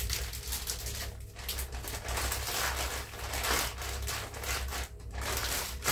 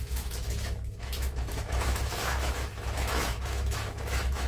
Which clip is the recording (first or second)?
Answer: first